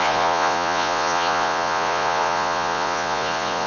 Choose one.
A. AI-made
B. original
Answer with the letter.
A